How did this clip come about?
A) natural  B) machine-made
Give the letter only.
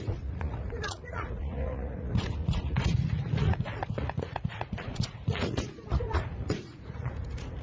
B